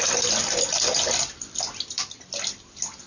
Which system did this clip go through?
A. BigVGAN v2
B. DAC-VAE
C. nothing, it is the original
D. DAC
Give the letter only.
C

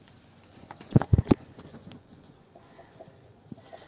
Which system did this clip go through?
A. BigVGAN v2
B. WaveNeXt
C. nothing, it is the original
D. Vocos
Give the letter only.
D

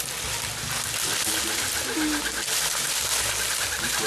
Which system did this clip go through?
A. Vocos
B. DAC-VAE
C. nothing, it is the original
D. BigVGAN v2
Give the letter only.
C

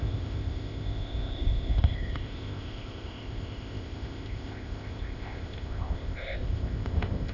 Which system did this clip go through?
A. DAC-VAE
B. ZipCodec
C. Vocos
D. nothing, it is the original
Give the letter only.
B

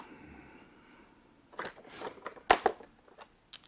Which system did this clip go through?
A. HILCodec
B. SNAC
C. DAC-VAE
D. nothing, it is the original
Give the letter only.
D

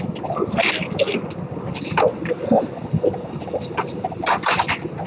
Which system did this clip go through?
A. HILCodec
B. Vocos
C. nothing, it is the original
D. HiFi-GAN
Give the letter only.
C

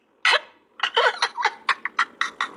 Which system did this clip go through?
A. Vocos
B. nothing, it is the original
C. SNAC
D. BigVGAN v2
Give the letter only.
B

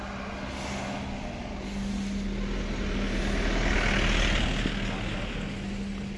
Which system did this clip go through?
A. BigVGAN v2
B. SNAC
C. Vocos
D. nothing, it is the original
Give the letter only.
D